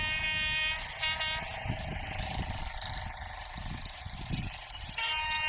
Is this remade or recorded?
recorded